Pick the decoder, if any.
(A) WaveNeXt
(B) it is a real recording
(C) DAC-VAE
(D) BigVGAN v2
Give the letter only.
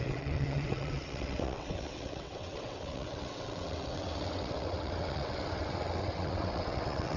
A